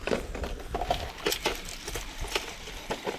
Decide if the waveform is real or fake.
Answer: real